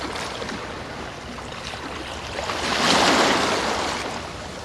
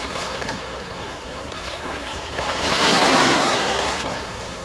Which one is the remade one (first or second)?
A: second